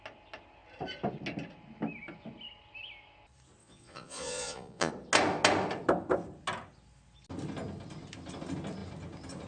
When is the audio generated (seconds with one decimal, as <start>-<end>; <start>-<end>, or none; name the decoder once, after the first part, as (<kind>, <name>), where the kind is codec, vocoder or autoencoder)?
3.6-4.9 (vocoder, Vocos)